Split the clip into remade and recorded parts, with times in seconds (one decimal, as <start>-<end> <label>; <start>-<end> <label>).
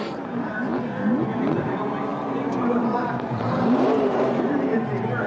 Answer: 0.0-0.7 remade; 0.7-1.6 recorded; 1.6-5.3 remade